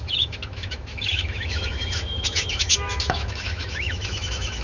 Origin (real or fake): fake